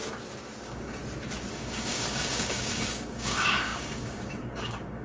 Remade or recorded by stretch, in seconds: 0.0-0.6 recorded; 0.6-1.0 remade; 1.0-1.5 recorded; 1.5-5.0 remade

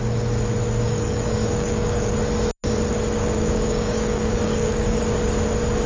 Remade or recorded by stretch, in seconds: 0.0-0.8 recorded; 0.8-2.1 remade; 2.1-3.2 recorded; 3.2-5.0 remade; 5.0-5.9 recorded

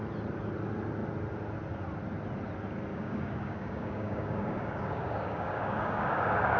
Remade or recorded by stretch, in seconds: 0.0-2.9 recorded; 2.9-6.6 remade

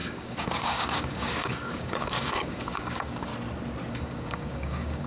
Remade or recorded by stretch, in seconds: 0.0-3.3 remade; 3.3-3.9 recorded; 3.9-5.1 remade

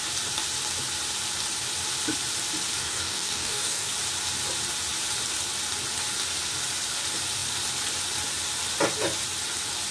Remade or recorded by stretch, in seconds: 0.0-2.8 recorded; 2.8-3.9 remade; 3.9-9.9 recorded

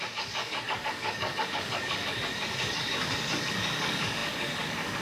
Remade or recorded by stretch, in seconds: 0.0-5.0 remade